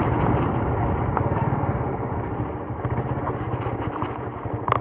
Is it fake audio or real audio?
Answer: real